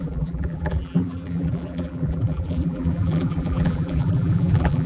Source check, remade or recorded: remade